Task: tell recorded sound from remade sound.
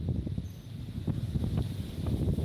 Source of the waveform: recorded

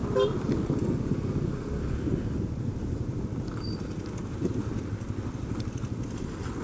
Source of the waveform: recorded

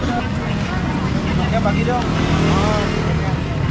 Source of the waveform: recorded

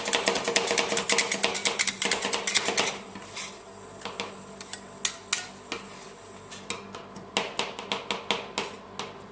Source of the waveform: recorded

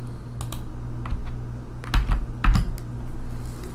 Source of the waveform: recorded